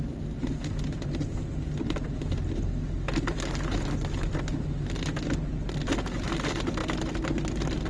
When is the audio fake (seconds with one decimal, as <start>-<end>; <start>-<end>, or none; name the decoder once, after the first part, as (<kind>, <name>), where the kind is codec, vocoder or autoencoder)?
none